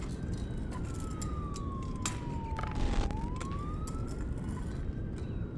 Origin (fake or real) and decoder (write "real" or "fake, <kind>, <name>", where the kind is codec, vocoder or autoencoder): real